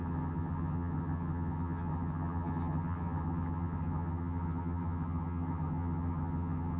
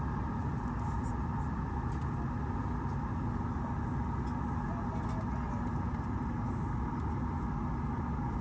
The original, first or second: second